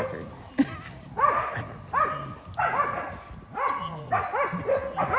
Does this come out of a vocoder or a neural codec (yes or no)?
no